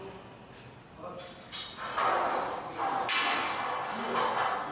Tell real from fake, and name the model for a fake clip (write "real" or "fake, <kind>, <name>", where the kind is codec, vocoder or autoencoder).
real